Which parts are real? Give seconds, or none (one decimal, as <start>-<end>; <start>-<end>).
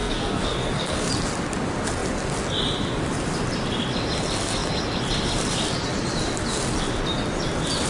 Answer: 1.1-7.9